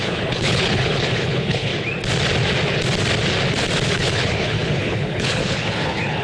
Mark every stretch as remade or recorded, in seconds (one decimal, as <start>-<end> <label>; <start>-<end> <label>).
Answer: 0.0-1.7 remade; 1.7-3.9 recorded; 3.9-6.2 remade